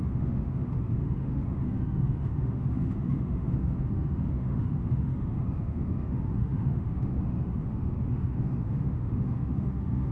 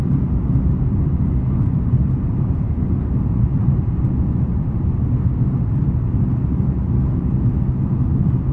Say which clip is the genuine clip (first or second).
second